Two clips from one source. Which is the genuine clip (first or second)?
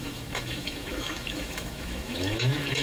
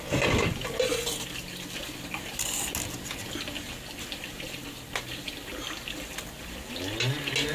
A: second